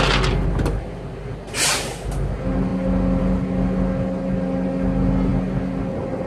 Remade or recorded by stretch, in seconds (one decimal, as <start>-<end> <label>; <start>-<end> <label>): 0.0-6.3 recorded